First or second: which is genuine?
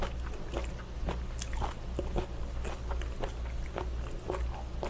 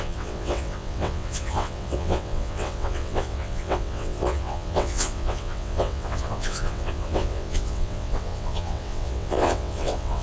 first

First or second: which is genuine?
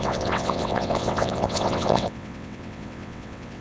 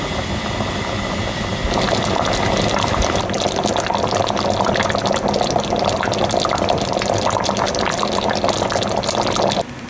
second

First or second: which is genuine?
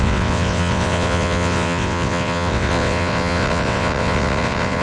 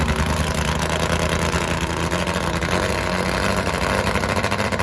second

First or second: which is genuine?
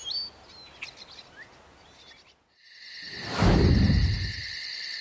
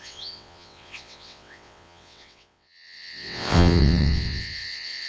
first